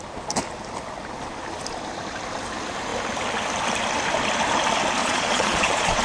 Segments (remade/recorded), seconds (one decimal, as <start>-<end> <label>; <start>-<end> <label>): 0.0-5.0 recorded; 5.0-6.0 remade